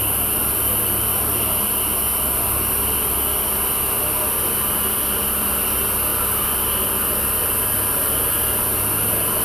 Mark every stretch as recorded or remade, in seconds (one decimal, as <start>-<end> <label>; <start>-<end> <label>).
0.0-1.1 recorded; 1.1-1.9 remade; 1.9-9.4 recorded